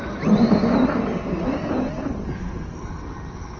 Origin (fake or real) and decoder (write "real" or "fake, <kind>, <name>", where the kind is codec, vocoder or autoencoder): real